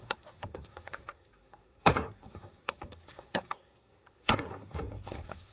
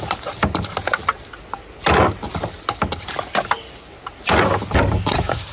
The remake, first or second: first